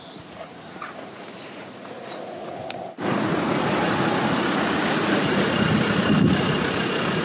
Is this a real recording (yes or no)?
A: no